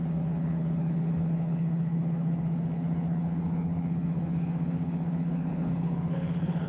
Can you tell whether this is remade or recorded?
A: remade